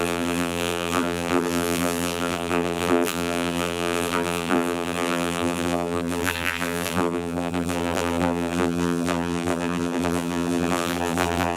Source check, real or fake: fake